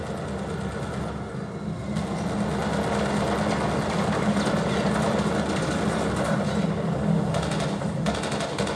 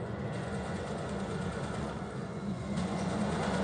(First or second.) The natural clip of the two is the first